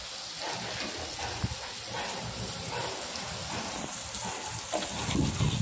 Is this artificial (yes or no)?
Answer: no